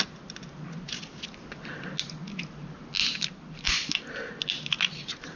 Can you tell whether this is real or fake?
real